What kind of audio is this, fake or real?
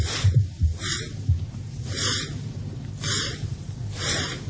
fake